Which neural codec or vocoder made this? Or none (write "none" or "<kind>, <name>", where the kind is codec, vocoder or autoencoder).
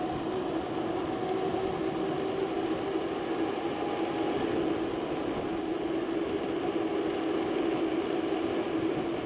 none